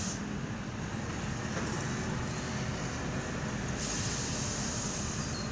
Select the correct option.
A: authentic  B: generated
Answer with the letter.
A